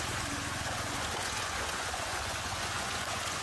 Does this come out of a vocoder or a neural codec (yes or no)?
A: yes